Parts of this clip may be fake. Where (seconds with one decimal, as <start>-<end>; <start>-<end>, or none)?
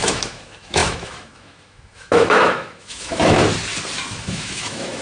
0.0-3.4; 4.2-5.0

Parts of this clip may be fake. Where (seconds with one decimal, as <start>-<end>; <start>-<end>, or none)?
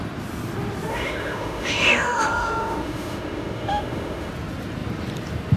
0.9-4.3